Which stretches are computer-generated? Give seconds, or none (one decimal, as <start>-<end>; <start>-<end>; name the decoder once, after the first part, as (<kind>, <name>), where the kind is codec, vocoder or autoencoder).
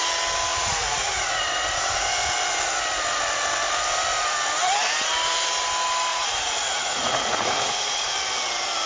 0.5-1.4 (vocoder, Vocos); 6.1-8.1